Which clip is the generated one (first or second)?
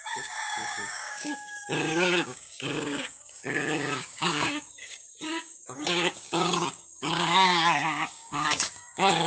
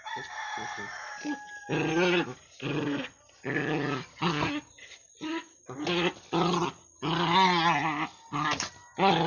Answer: first